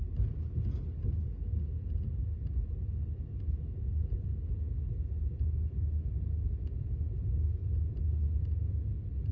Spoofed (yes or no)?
no